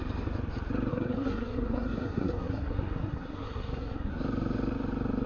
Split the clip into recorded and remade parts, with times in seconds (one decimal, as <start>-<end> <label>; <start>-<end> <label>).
0.0-0.9 recorded; 0.9-4.1 remade; 4.1-5.3 recorded

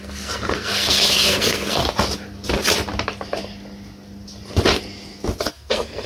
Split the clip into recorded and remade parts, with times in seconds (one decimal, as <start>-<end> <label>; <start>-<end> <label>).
0.0-1.8 remade; 1.8-5.5 recorded; 5.5-6.1 remade

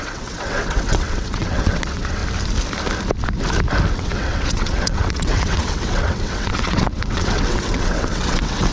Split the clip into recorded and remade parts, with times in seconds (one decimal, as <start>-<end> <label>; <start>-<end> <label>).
0.0-2.2 remade; 2.2-3.9 recorded; 3.9-8.7 remade